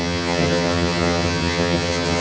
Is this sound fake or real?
fake